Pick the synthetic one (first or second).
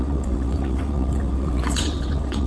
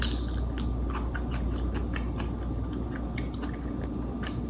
first